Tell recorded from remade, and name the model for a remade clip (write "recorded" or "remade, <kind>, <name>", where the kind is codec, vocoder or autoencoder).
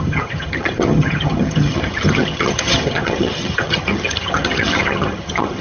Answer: remade, vocoder, HiFi-GAN